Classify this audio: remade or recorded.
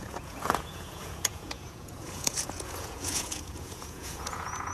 remade